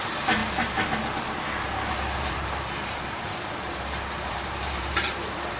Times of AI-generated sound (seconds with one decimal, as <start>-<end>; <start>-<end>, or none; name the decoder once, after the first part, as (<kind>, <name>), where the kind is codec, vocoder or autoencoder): 0.0-0.4 (vocoder, BigVGAN v2); 1.9-5.6